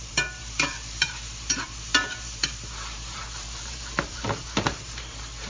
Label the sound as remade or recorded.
remade